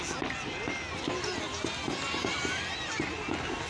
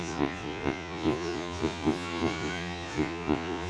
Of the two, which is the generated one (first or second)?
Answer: second